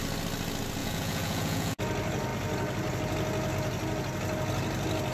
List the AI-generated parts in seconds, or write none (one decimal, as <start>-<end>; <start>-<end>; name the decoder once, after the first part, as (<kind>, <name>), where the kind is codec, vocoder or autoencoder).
0.8-1.8 (vocoder, Vocos)